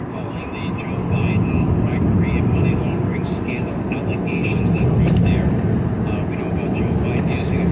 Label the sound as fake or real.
real